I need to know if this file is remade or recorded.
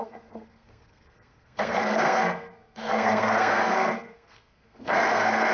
remade